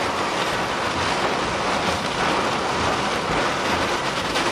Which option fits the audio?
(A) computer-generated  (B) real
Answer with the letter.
B